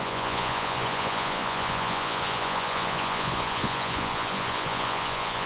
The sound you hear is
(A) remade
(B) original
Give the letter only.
A